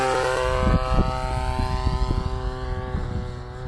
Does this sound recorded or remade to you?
recorded